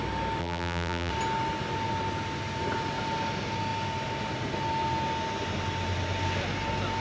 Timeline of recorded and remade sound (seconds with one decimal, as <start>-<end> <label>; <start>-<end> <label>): 0.0-0.4 recorded; 0.4-1.1 remade; 1.1-7.0 recorded